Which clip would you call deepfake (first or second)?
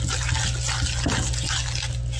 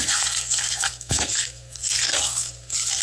second